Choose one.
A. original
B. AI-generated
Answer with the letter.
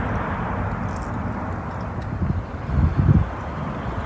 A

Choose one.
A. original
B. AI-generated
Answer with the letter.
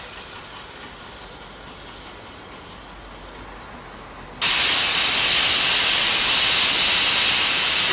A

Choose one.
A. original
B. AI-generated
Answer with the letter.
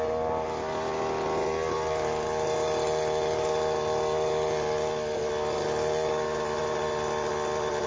A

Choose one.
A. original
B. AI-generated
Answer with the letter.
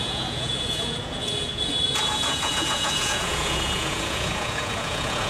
B